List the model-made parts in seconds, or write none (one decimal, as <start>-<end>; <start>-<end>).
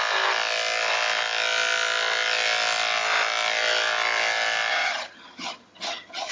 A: 4.7-6.3